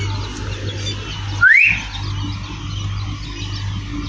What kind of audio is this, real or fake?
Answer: real